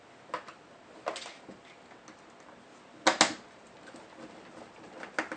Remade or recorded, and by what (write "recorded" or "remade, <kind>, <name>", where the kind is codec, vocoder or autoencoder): recorded